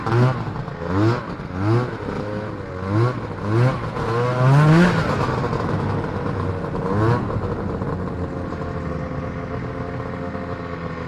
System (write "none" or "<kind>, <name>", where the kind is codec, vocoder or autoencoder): none